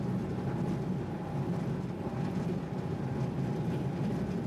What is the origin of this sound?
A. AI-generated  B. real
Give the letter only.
B